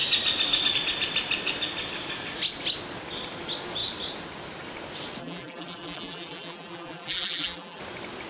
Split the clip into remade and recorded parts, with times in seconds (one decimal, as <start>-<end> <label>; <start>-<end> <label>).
0.0-5.2 recorded; 5.2-7.8 remade; 7.8-8.3 recorded

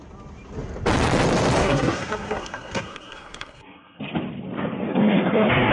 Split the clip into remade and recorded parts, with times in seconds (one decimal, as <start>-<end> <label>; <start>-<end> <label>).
0.0-1.6 recorded; 1.6-4.0 remade; 4.0-4.9 recorded; 4.9-5.7 remade

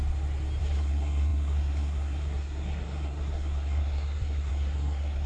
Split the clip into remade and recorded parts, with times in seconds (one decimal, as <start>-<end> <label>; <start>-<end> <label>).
0.0-0.6 recorded; 0.6-5.3 remade

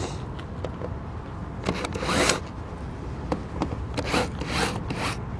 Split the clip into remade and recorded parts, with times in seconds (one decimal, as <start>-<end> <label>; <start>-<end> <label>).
0.0-5.4 recorded